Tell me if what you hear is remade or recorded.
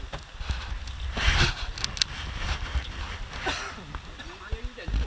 recorded